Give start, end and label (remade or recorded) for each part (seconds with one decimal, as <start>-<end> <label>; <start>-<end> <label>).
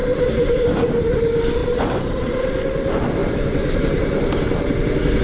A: 0.0-0.5 remade; 0.5-1.6 recorded; 1.6-2.3 remade; 2.3-3.2 recorded; 3.2-4.8 remade; 4.8-5.2 recorded